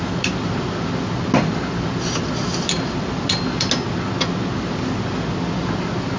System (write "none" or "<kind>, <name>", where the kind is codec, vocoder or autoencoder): none